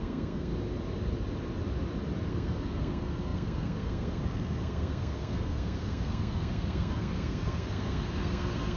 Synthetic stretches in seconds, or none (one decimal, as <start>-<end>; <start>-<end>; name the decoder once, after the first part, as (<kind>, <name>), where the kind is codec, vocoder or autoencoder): 0.0-0.5 (codec, SNAC); 2.3-8.8